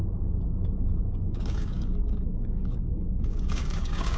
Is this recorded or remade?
remade